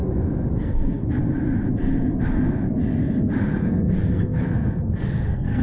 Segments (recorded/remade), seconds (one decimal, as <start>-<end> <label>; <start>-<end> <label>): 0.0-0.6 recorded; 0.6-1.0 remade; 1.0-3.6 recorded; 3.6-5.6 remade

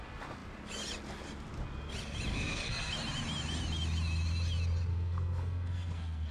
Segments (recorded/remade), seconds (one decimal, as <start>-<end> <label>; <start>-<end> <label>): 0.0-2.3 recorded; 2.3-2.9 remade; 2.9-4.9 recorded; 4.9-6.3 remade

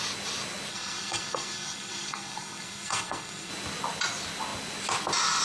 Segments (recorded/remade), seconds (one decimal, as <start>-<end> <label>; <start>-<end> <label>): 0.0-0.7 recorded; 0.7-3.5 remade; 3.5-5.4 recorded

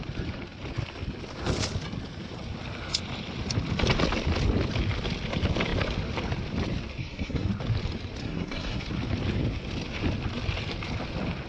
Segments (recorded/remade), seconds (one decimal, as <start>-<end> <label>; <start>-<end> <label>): 0.0-7.0 recorded; 7.0-7.5 remade; 7.5-8.2 recorded; 8.2-8.9 remade; 8.9-11.5 recorded

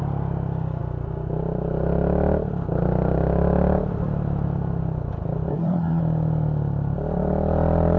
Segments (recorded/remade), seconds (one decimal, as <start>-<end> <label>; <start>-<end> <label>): 0.0-5.5 recorded; 5.5-6.0 remade; 6.0-8.0 recorded